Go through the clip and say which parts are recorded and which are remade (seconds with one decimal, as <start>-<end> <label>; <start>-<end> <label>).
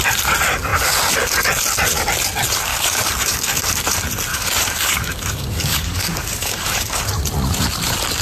0.0-2.7 recorded; 2.7-3.8 remade; 3.8-4.3 recorded; 4.3-7.0 remade; 7.0-8.2 recorded